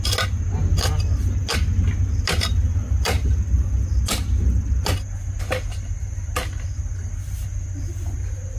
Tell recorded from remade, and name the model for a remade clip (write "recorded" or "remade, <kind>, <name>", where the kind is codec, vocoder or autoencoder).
recorded